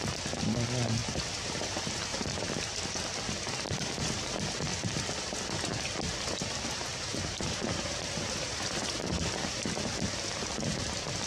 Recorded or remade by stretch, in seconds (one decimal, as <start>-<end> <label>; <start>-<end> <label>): 0.0-1.0 recorded; 1.0-1.6 remade; 1.6-2.1 recorded; 2.1-2.6 remade; 2.6-4.7 recorded; 4.7-5.9 remade; 5.9-7.1 recorded; 7.1-9.9 remade; 9.9-11.3 recorded